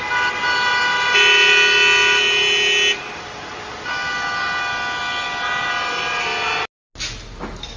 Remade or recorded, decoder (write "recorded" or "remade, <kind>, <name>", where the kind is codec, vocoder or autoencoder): recorded